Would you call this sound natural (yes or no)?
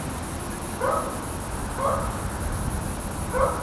yes